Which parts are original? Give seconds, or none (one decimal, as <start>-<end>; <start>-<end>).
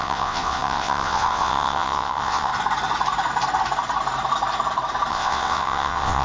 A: 2.5-5.1